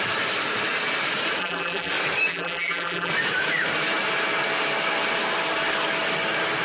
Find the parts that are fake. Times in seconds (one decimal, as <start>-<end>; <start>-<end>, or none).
1.4-1.9; 2.3-3.1